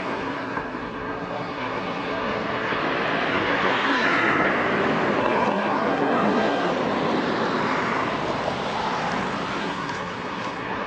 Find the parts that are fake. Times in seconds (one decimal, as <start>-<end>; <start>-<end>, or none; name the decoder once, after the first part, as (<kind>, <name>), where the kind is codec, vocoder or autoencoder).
0.0-2.8 (codec, SNAC); 3.3-4.5; 5.2-6.7; 9.6-10.9